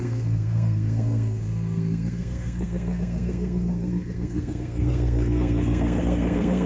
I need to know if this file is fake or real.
fake